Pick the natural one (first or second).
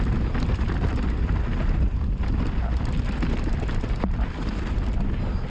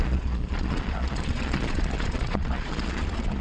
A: first